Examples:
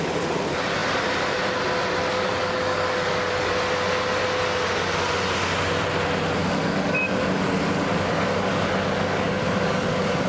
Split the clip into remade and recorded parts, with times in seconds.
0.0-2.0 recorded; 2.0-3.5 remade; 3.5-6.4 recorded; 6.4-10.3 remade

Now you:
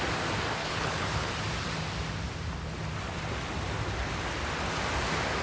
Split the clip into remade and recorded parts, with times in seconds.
0.0-0.6 recorded; 0.6-1.3 remade; 1.3-5.4 recorded

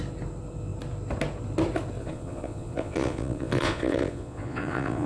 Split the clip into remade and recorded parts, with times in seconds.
0.0-2.0 recorded; 2.0-5.1 remade

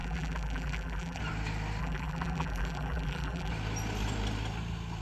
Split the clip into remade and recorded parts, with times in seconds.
0.0-1.2 remade; 1.2-1.8 recorded; 1.8-3.5 remade; 3.5-5.0 recorded

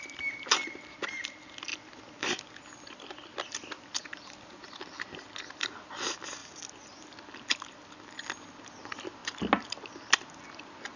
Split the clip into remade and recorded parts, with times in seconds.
0.0-11.0 recorded

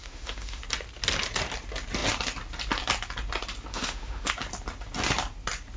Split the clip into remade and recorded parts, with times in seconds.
0.0-0.6 remade; 0.6-3.7 recorded; 3.7-4.3 remade; 4.3-5.8 recorded

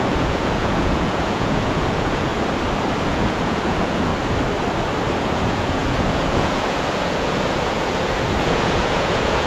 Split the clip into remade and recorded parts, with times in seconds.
0.0-2.3 remade; 2.3-3.1 recorded; 3.1-4.1 remade; 4.1-5.2 recorded; 5.2-9.5 remade